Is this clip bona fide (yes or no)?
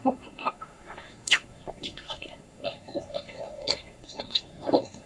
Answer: no